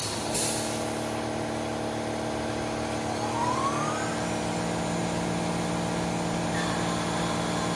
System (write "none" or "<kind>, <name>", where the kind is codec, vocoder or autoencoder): none